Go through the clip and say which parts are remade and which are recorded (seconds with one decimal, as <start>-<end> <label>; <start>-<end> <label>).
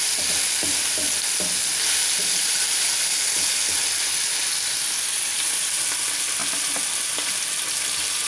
0.0-8.3 recorded